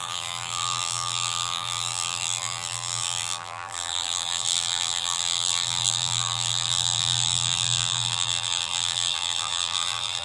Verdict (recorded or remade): remade